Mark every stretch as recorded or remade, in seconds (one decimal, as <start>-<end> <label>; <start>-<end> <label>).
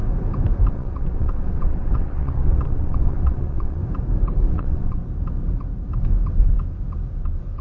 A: 0.0-0.7 recorded; 0.7-3.8 remade; 3.8-4.5 recorded; 4.5-5.0 remade; 5.0-7.6 recorded